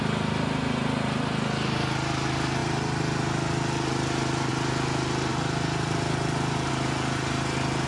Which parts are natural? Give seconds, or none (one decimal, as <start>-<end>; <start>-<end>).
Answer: 0.0-7.9